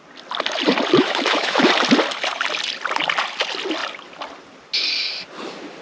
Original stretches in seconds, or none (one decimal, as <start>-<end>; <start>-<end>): 0.0-1.0; 1.6-5.8